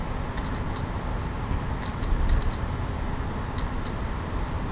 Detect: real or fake real